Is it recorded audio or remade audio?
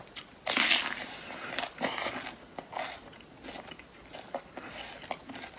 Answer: recorded